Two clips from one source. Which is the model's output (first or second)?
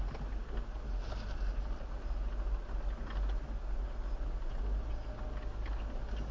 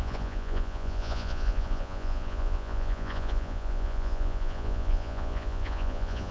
second